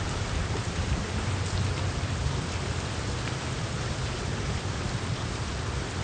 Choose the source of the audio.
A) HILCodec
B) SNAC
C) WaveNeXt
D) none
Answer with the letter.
D